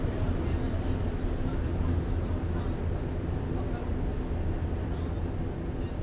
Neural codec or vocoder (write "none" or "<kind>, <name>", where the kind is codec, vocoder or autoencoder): none